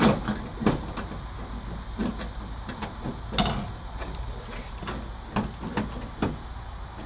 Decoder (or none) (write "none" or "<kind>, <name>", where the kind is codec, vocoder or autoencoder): none